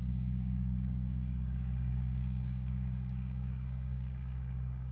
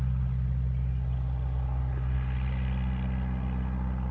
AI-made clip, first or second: first